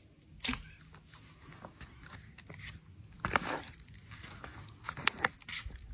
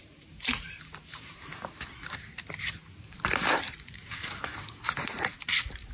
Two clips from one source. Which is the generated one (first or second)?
second